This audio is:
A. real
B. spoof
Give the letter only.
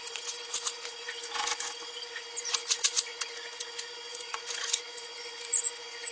B